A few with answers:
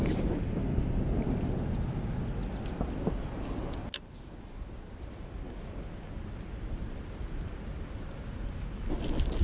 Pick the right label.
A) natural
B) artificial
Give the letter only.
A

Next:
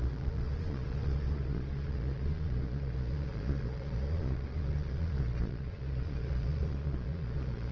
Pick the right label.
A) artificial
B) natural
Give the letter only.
A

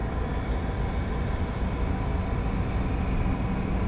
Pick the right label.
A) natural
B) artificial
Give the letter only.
A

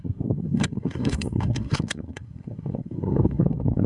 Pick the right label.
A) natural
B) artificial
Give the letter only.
B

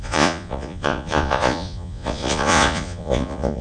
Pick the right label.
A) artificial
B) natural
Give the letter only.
A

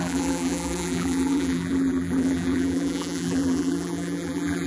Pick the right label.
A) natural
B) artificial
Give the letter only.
B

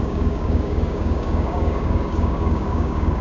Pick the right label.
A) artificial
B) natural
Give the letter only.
A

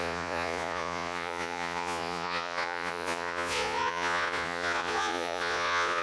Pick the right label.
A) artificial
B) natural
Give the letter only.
A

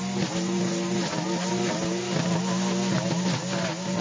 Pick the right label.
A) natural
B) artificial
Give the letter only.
A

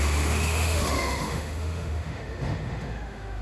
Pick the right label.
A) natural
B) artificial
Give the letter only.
B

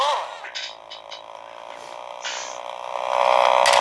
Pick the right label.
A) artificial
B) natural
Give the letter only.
B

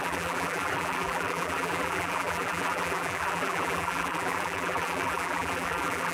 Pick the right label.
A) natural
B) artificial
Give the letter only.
B